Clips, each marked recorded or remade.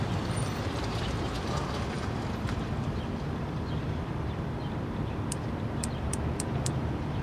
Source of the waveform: remade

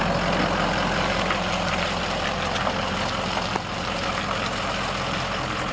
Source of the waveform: recorded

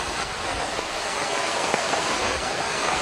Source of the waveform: remade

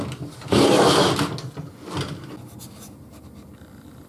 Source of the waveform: recorded